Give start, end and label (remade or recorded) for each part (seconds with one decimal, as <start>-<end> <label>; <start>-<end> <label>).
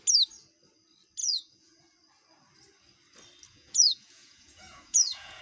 0.0-1.2 recorded; 1.2-1.8 remade; 1.8-3.5 recorded; 3.5-5.4 remade